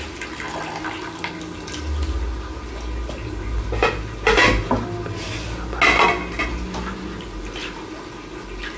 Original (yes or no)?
yes